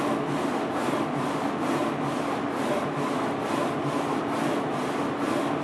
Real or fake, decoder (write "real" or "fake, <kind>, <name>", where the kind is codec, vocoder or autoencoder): real